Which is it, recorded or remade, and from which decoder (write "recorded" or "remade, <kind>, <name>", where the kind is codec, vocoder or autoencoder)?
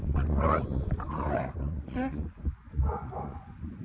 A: remade, vocoder, Vocos